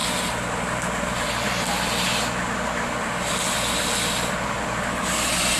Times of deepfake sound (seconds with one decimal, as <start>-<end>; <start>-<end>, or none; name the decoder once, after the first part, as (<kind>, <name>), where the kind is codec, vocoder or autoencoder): none